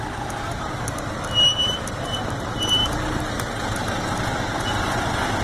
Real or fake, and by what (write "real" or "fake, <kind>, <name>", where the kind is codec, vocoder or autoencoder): real